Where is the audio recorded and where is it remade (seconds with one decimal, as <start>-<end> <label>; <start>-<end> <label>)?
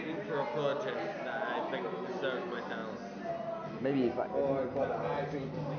0.0-5.8 recorded